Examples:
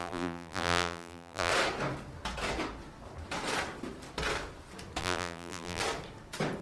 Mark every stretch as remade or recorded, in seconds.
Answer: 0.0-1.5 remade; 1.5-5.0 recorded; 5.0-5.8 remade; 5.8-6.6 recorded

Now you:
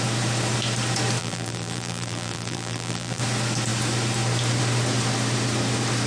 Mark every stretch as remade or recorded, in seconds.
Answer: 0.0-1.2 recorded; 1.2-3.2 remade; 3.2-6.1 recorded